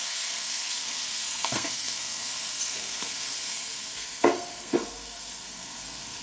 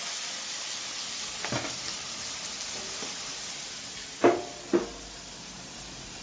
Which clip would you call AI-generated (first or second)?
first